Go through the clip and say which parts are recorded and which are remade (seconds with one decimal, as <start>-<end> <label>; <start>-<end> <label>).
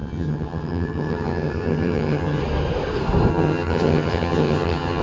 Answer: 0.0-2.4 remade; 2.4-3.3 recorded; 3.3-5.0 remade